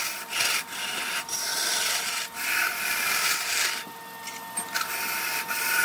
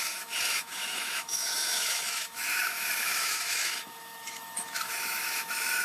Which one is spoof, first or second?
second